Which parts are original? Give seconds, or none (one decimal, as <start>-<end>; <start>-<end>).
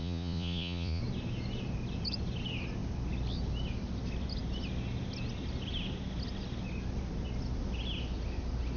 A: 1.0-8.8